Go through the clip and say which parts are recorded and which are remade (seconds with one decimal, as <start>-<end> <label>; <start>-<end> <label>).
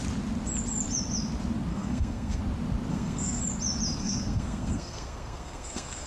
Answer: 0.0-1.7 recorded; 1.7-2.4 remade; 2.4-2.9 recorded; 2.9-3.4 remade; 3.4-4.0 recorded; 4.0-6.1 remade